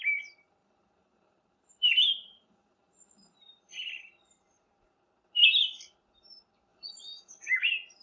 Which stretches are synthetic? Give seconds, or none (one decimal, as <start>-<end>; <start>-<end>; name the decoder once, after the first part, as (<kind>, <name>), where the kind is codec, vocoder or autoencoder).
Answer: 0.6-4.0 (vocoder, BigVGAN v2); 6.7-7.5